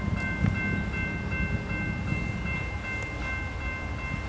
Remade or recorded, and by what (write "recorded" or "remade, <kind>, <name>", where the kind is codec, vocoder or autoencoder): recorded